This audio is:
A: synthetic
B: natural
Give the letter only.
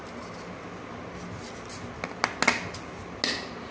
B